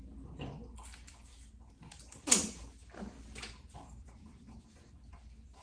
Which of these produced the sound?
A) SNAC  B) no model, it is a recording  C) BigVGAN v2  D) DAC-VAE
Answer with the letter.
B